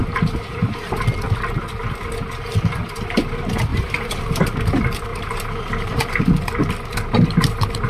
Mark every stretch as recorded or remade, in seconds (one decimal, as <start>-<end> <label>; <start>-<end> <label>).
0.0-1.0 remade; 1.0-3.7 recorded; 3.7-4.4 remade; 4.4-5.1 recorded; 5.1-6.2 remade; 6.2-7.9 recorded